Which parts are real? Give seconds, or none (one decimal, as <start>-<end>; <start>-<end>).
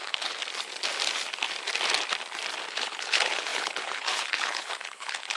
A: 0.4-2.7